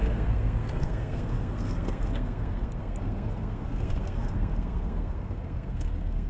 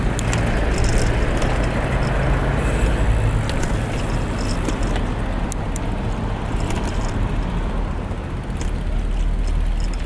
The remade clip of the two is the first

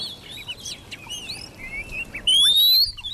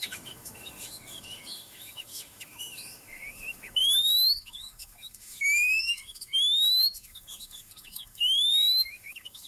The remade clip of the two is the second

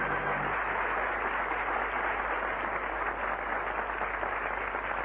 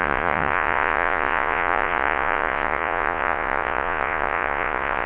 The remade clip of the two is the second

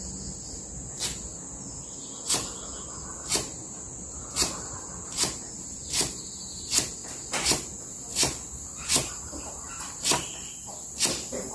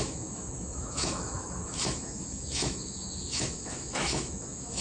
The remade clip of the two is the second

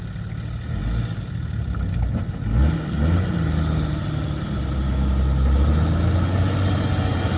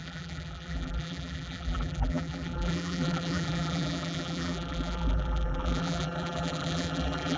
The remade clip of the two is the second